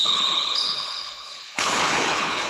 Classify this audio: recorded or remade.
remade